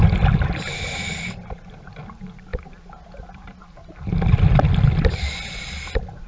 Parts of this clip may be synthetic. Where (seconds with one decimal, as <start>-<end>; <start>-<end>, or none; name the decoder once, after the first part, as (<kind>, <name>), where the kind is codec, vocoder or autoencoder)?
none